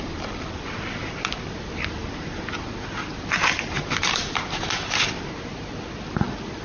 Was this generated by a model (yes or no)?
no